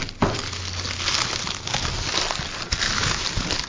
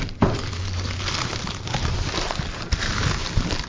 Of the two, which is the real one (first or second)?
first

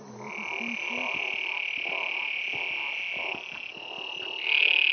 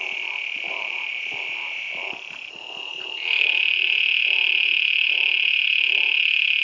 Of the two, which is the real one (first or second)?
first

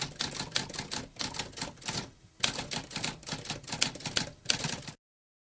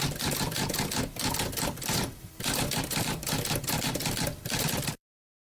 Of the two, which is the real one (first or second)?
first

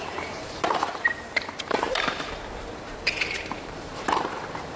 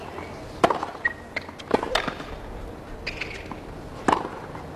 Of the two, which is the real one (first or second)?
second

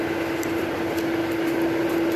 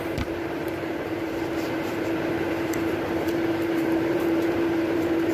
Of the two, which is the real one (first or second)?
first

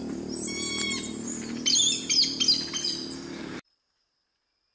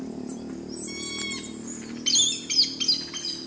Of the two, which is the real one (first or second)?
second